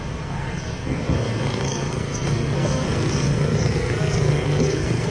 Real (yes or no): no